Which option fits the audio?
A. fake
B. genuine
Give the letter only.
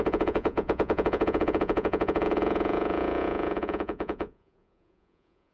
A